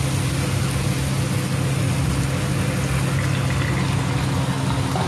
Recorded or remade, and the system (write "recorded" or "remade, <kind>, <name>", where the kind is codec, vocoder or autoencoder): recorded